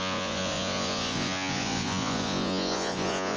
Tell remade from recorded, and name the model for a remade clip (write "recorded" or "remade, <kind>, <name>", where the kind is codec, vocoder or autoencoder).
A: remade, vocoder, Vocos